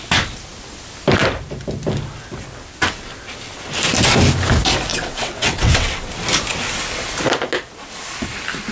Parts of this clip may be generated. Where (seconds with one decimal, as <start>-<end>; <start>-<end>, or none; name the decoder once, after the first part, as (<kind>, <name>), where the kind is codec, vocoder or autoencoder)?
4.9-6.1 (vocoder, WaveNeXt)

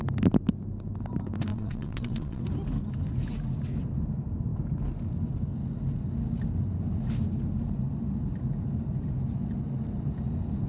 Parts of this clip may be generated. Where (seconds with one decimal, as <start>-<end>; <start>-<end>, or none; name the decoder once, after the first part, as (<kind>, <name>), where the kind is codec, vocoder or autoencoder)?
1.5-2.4 (vocoder, WaveNeXt)

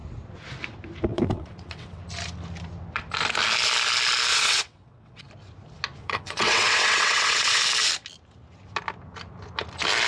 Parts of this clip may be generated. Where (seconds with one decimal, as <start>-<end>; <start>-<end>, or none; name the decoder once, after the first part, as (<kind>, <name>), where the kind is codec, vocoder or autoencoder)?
1.1-2.0 (vocoder, WaveNeXt); 4.3-5.3; 6.0-7.6

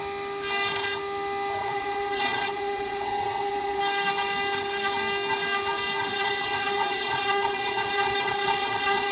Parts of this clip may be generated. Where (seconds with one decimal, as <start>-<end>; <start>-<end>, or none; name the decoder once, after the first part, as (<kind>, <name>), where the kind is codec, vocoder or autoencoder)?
1.6-3.8 (vocoder, WaveNeXt); 6.1-9.1